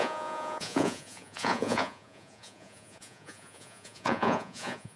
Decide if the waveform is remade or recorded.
remade